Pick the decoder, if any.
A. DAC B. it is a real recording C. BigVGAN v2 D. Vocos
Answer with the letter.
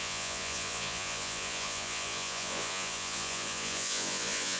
D